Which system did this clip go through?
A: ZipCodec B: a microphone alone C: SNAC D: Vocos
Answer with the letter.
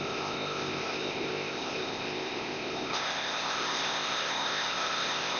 A